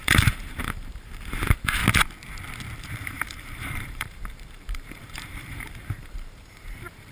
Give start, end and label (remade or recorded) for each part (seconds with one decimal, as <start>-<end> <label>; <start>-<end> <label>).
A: 0.0-1.8 remade; 1.8-2.8 recorded; 2.8-7.1 remade